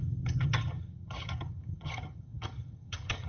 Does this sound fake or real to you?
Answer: fake